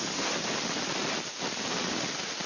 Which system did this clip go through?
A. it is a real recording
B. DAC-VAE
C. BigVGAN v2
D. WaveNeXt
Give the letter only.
A